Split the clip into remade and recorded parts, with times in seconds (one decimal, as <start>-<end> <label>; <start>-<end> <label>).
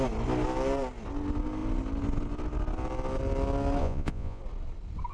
0.0-3.8 recorded; 3.8-4.4 remade; 4.4-5.1 recorded